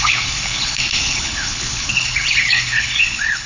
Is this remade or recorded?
remade